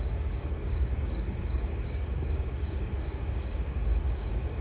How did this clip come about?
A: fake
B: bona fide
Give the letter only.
A